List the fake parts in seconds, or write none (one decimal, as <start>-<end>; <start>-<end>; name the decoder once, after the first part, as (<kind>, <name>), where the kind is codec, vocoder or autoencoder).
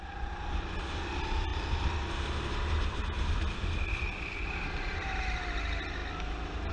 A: none